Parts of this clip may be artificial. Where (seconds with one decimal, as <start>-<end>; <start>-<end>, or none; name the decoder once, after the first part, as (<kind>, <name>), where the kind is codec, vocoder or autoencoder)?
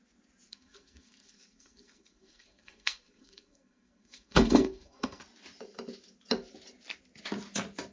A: 0.5-5.2 (codec, SNAC)